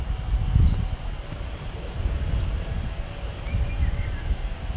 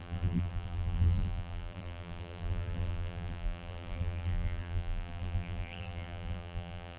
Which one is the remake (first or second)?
second